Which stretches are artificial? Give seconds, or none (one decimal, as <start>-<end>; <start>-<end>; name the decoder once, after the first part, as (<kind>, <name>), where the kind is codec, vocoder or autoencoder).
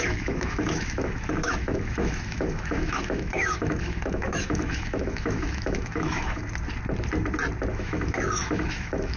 0.0-6.4 (autoencoder, DAC-VAE); 7.7-9.2